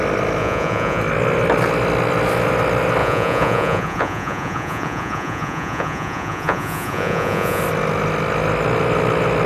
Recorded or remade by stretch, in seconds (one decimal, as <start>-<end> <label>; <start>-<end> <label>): 0.0-0.4 recorded; 0.4-1.0 remade; 1.0-3.0 recorded; 3.0-7.6 remade; 7.6-9.5 recorded